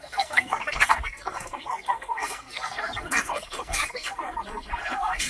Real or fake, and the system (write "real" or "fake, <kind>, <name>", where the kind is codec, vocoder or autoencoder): fake, codec, SNAC